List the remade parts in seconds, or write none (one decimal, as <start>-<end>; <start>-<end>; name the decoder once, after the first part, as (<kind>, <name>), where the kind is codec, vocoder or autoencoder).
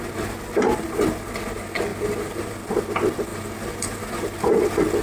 1.9-2.8 (vocoder, BigVGAN v2); 3.3-4.2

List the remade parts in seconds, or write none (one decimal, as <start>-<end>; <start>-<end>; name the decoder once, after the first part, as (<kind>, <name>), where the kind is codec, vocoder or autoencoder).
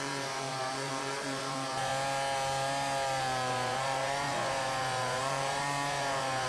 0.0-1.9 (vocoder, Vocos); 3.5-6.5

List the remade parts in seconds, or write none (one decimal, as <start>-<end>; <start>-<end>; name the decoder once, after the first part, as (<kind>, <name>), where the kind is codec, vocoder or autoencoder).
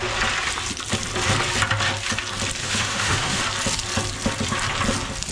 2.6-3.4 (autoencoder, DAC-VAE)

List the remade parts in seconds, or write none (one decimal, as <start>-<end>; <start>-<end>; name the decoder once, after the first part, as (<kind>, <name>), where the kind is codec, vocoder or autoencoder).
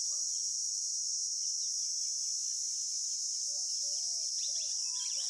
0.0-1.1 (vocoder, BigVGAN v2)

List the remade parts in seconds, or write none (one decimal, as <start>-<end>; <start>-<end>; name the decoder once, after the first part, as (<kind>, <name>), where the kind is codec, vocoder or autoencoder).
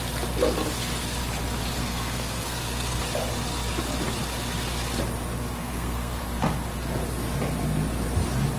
1.8-3.0 (codec, SNAC); 5.6-6.2